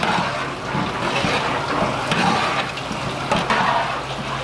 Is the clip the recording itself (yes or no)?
yes